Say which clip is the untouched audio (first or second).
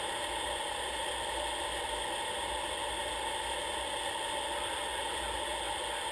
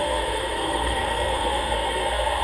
first